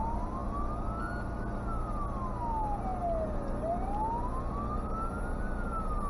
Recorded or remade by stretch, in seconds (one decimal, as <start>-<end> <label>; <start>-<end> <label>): 0.0-6.1 recorded